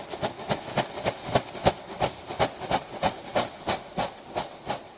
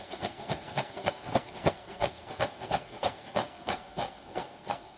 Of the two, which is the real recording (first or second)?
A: first